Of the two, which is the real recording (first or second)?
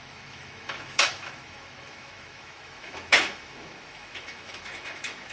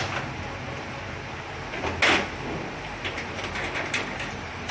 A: second